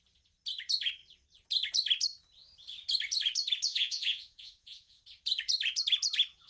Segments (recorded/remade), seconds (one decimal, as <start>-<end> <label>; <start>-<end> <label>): 0.0-3.7 recorded; 3.7-5.0 remade; 5.0-6.5 recorded